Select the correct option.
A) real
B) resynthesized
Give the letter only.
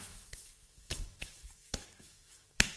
B